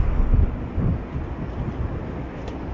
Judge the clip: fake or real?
real